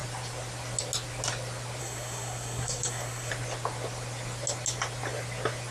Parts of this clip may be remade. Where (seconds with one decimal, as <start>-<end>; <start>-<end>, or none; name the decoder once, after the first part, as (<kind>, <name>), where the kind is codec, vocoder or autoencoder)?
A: 1.8-3.3 (codec, SNAC)